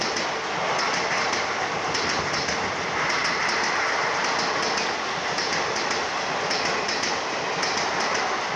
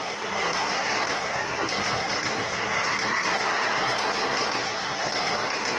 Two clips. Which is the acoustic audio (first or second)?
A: first